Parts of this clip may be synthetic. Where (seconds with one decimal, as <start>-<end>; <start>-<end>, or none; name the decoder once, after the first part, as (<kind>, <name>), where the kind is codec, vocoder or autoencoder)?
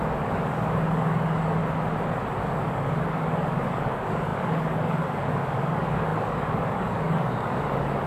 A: 0.0-1.6 (codec, DAC); 2.4-8.1